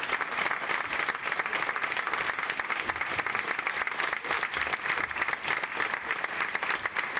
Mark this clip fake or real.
real